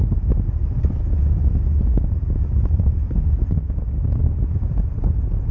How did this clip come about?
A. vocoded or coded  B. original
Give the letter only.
B